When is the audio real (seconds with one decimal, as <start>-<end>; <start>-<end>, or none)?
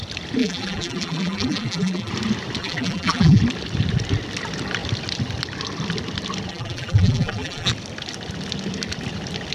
0.0-0.4; 2.1-2.6; 3.4-6.5; 7.7-9.5